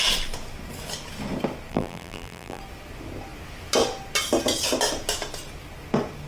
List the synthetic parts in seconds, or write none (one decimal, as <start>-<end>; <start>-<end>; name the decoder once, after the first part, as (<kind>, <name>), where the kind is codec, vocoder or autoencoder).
1.7-2.6 (vocoder, BigVGAN v2)